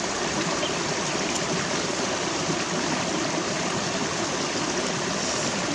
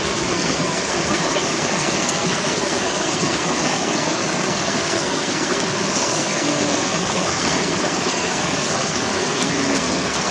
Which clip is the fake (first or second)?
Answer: second